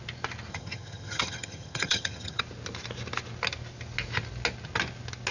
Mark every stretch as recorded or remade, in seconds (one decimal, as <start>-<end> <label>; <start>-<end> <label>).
0.0-0.5 recorded; 0.5-2.4 remade; 2.4-5.3 recorded